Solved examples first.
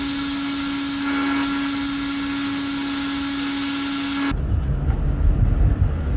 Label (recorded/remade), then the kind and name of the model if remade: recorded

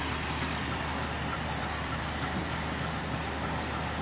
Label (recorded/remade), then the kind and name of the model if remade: remade, vocoder, BigVGAN v2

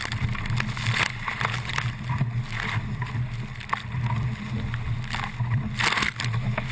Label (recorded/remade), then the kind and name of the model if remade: recorded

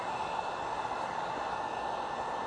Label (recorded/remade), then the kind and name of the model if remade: recorded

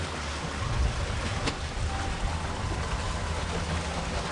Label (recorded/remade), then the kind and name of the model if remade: recorded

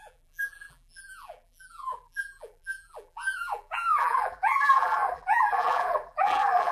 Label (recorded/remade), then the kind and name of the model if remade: remade, vocoder, BigVGAN v2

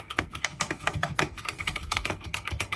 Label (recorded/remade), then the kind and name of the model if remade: remade, codec, SNAC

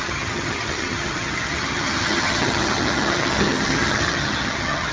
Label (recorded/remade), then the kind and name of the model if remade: remade, vocoder, HiFi-GAN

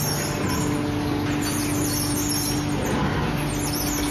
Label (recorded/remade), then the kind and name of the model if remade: recorded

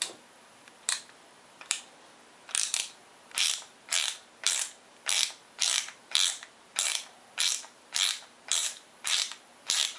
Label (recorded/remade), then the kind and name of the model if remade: remade, vocoder, BigVGAN v2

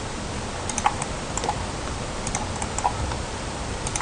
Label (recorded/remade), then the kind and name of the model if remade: recorded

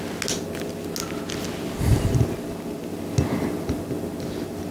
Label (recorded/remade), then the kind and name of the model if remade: recorded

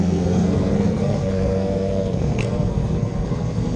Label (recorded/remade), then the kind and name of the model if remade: remade, codec, SNAC